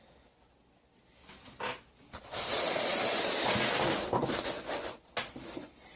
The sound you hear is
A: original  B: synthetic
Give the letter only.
A